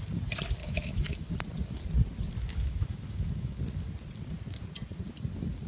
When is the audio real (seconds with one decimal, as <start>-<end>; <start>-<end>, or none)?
0.0-0.6; 1.3-2.4; 3.6-5.7

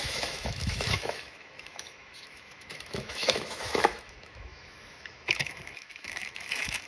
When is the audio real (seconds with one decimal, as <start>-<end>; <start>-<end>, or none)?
none

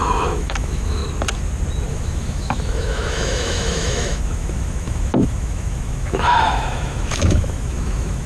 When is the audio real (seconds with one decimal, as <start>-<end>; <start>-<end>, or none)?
1.0-1.9

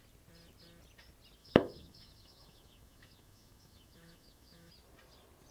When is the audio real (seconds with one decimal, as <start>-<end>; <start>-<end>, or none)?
0.0-1.4; 4.7-5.5

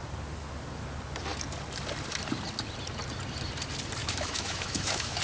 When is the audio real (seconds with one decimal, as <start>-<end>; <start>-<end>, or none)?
0.0-4.0

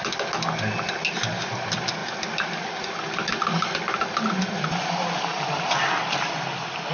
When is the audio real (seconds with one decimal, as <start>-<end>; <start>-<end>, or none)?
0.0-6.9

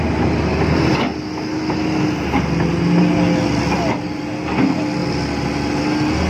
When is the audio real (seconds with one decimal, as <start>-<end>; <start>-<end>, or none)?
0.0-6.3

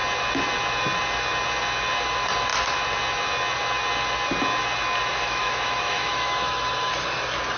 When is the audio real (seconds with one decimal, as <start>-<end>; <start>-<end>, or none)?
0.0-5.1; 6.9-7.6